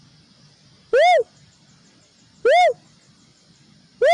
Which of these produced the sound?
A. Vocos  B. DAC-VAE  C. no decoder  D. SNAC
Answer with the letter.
C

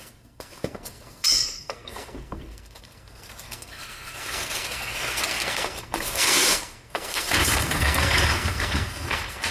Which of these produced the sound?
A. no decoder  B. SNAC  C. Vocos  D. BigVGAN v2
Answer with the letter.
B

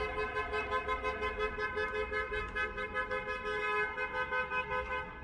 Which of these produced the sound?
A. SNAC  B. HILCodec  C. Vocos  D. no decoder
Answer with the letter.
D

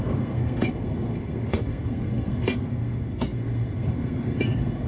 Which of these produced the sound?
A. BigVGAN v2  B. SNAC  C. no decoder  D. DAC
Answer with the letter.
B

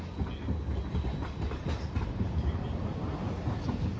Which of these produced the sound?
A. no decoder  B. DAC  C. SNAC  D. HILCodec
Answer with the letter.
A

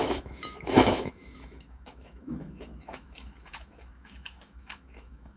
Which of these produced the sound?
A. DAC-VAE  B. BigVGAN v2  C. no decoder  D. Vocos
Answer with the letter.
A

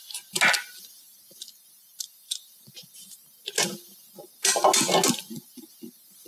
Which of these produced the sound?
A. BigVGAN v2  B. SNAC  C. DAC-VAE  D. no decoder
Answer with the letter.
D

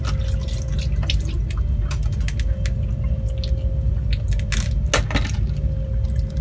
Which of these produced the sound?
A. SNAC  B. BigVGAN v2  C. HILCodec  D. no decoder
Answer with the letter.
D